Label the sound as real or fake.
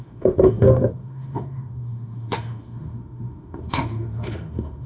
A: fake